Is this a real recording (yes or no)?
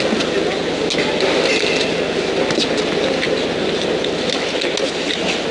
yes